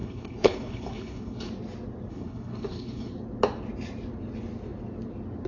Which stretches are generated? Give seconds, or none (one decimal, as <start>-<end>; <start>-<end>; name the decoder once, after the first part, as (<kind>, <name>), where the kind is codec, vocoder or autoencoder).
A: 0.0-1.5 (codec, HILCodec); 2.1-3.1